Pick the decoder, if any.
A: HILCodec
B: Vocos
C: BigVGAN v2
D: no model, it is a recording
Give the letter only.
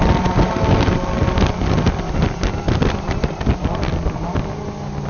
D